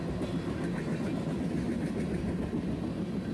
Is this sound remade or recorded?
recorded